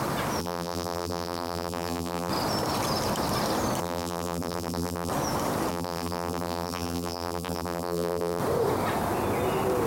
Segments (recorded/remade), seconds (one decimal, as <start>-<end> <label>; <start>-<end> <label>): 0.0-0.4 recorded; 0.4-2.3 remade; 2.3-3.8 recorded; 3.8-5.1 remade; 5.1-5.7 recorded; 5.7-8.4 remade; 8.4-9.9 recorded